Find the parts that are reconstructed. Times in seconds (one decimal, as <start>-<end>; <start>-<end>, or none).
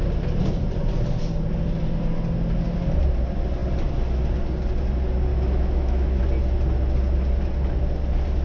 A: 5.3-6.2